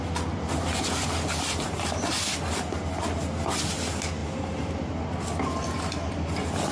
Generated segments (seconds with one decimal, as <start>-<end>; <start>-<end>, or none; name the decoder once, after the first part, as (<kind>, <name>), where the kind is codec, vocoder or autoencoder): 4.2-4.8 (vocoder, BigVGAN v2)